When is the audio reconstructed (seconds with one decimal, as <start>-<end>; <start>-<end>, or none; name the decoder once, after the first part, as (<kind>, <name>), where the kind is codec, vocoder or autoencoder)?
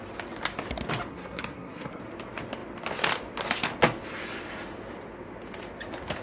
1.1-2.0 (codec, SNAC)